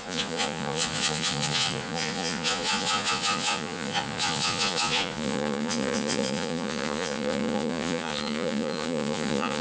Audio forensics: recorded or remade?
remade